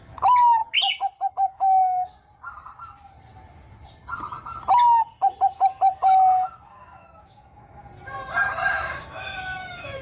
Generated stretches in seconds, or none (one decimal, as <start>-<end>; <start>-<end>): 0.0-0.6; 1.3-2.1; 6.0-7.8; 8.7-10.0